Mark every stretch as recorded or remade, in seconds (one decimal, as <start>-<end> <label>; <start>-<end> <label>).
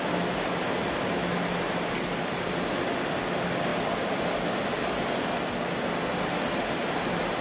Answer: 0.0-7.4 recorded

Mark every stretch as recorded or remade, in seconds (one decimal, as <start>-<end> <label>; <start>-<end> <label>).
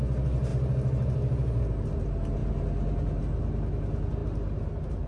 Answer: 0.0-5.1 recorded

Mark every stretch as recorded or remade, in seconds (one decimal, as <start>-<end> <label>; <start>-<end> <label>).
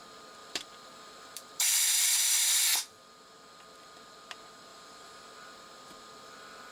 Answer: 0.0-0.4 recorded; 0.4-2.3 remade; 2.3-4.7 recorded; 4.7-5.2 remade; 5.2-6.7 recorded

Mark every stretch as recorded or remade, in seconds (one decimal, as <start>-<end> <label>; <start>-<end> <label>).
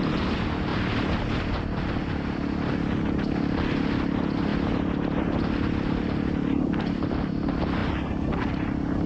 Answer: 0.0-0.7 recorded; 0.7-1.2 remade; 1.2-4.5 recorded; 4.5-7.3 remade; 7.3-7.8 recorded; 7.8-9.1 remade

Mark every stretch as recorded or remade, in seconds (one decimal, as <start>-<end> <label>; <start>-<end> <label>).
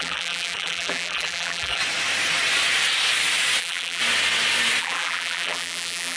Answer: 0.0-1.8 remade; 1.8-3.6 recorded; 3.6-4.0 remade; 4.0-4.8 recorded; 4.8-6.2 remade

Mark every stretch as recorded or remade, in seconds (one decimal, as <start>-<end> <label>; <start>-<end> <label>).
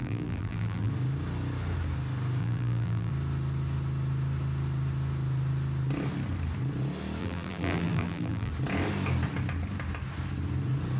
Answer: 0.0-0.9 remade; 0.9-2.4 recorded; 2.4-3.1 remade; 3.1-7.2 recorded; 7.2-8.5 remade; 8.5-11.0 recorded